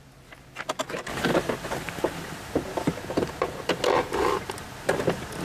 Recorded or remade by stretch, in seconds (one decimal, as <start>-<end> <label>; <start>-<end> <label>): 0.0-5.4 recorded